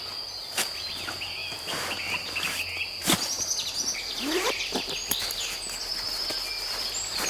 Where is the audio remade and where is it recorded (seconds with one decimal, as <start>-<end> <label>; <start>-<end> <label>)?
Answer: 0.0-7.3 recorded